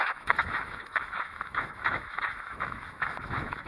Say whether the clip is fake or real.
fake